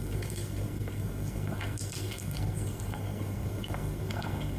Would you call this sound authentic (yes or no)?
no